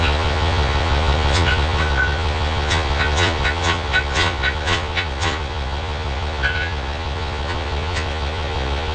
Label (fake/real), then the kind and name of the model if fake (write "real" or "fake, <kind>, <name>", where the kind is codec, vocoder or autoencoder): fake, vocoder, Vocos